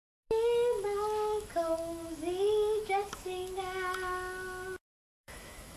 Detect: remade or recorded remade